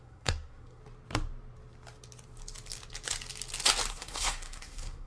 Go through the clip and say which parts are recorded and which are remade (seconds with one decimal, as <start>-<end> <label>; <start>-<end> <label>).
0.0-0.8 remade; 0.8-3.9 recorded; 3.9-5.1 remade